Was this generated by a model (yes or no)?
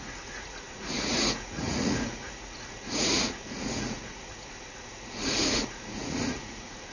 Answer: yes